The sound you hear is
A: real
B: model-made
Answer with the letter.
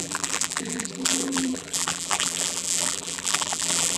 B